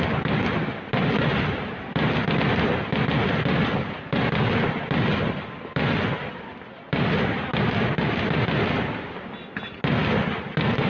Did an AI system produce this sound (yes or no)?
no